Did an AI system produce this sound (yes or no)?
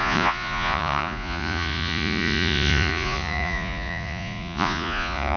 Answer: yes